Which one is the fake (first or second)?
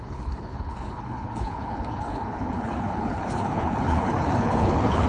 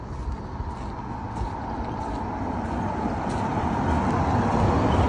first